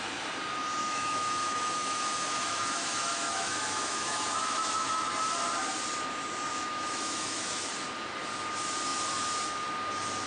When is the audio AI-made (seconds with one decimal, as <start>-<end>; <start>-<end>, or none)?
0.8-5.1; 6.5-7.7